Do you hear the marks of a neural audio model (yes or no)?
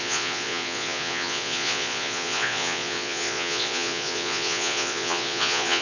yes